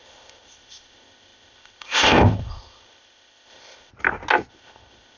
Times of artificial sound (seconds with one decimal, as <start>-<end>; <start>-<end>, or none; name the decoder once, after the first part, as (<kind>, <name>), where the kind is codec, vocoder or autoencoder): 0.0-3.9 (codec, ZipCodec); 4.5-5.2